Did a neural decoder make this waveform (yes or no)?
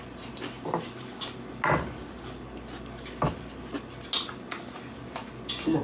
no